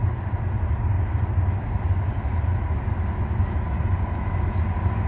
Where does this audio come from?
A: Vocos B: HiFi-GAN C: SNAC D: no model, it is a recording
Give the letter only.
D